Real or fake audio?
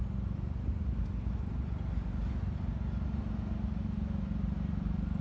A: real